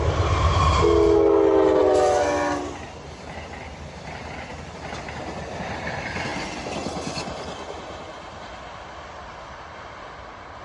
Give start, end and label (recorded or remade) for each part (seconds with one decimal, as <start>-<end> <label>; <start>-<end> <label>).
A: 0.0-10.6 recorded

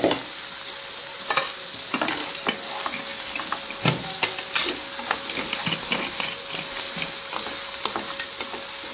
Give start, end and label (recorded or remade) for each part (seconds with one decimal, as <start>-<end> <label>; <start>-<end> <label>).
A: 0.0-8.9 recorded

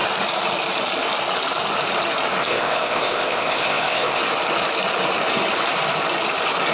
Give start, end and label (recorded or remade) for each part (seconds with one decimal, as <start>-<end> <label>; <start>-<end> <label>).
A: 0.0-2.4 recorded; 2.4-4.2 remade; 4.2-6.7 recorded

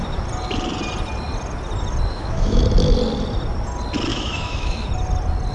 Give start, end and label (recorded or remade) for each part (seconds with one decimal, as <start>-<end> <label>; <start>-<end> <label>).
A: 0.0-2.1 recorded; 2.1-2.6 remade; 2.6-4.1 recorded; 4.1-4.9 remade; 4.9-5.5 recorded

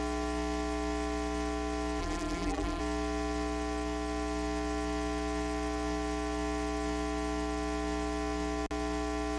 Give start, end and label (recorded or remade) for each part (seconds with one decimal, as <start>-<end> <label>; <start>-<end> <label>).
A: 0.0-2.0 recorded; 2.0-2.8 remade; 2.8-9.4 recorded

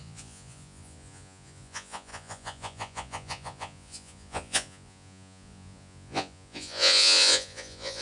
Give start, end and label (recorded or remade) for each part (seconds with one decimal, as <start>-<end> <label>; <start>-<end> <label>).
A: 0.0-8.0 remade